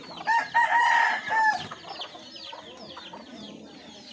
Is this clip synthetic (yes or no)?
no